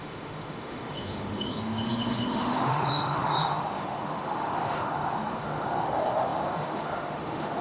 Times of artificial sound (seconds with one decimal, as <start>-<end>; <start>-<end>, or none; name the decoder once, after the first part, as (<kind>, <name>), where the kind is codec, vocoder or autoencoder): 0.0-7.6 (autoencoder, DAC-VAE)